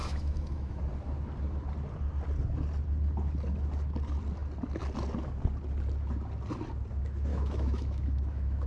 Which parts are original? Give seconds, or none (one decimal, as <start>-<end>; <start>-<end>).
0.8-7.3